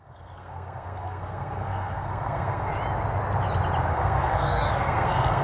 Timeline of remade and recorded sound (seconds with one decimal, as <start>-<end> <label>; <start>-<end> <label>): 0.0-2.7 remade; 2.7-3.9 recorded; 3.9-5.4 remade